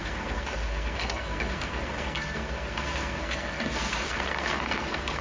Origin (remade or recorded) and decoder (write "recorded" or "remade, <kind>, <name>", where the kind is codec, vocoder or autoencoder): remade, codec, SNAC